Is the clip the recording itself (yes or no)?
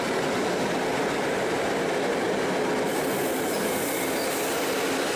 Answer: yes